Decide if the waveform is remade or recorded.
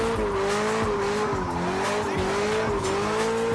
recorded